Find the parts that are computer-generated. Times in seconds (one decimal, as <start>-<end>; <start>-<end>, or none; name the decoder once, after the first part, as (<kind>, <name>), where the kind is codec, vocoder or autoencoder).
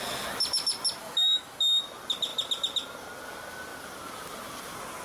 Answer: 1.0-1.8 (autoencoder, DAC-VAE)